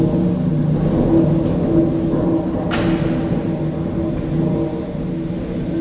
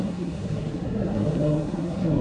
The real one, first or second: first